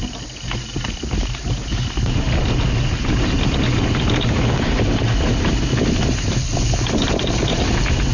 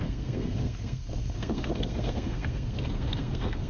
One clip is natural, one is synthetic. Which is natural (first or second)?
first